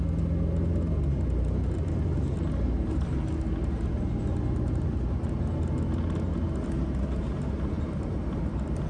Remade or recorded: recorded